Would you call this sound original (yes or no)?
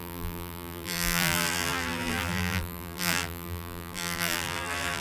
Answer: no